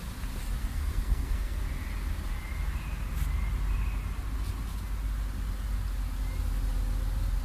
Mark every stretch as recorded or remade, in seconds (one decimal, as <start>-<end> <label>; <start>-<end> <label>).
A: 0.0-0.6 recorded; 0.6-1.6 remade; 1.6-7.4 recorded